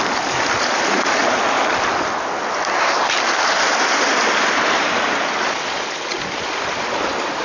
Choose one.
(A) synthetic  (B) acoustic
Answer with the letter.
B